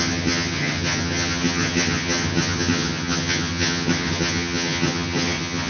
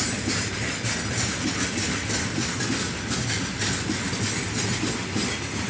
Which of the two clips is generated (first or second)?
first